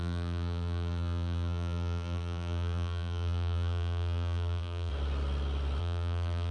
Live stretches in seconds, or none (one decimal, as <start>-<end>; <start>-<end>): 4.9-5.8